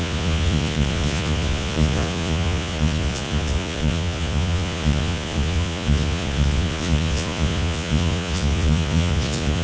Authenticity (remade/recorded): remade